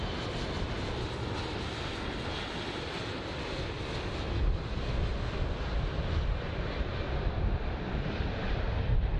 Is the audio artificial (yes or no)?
no